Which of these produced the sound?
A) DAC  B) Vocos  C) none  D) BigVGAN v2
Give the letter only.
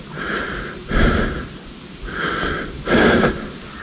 D